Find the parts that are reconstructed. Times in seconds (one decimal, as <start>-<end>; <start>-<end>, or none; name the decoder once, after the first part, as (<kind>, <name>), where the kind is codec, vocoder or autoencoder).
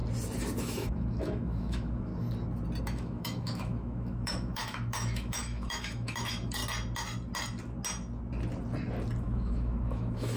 0.6-2.1 (autoencoder, DAC-VAE); 2.8-6.6; 9.2-10.4